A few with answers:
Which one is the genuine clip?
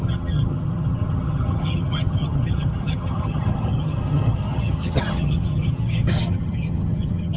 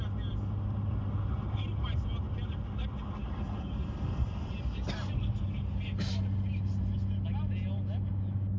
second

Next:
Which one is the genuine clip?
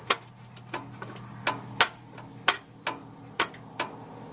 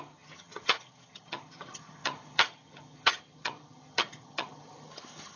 first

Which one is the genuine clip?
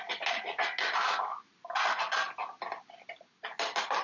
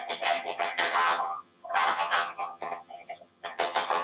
first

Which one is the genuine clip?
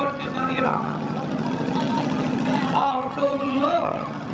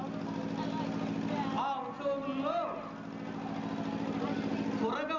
second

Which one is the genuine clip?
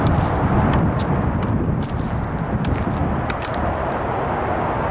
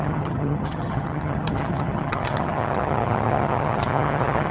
first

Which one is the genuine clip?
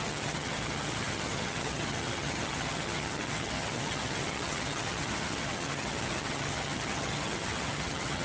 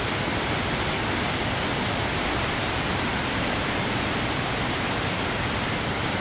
second